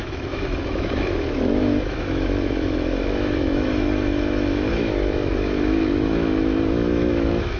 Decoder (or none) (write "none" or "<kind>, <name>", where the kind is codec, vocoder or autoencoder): autoencoder, DAC-VAE